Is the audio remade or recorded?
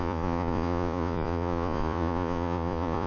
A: remade